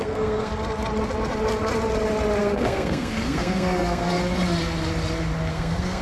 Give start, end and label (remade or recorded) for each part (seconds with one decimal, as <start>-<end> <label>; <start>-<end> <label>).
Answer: 0.0-0.5 remade; 0.5-2.4 recorded; 2.4-4.2 remade; 4.2-5.5 recorded; 5.5-6.0 remade